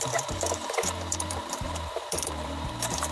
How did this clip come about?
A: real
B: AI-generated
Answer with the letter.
B